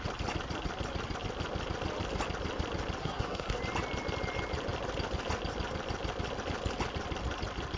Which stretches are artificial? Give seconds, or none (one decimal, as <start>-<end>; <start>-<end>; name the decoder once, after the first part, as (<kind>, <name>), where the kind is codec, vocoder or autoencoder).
3.0-3.6 (codec, SNAC)